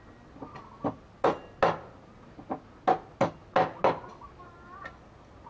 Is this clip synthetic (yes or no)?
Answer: no